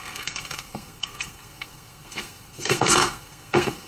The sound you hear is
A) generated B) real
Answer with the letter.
A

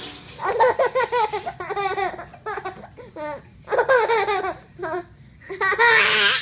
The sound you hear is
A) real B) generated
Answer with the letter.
A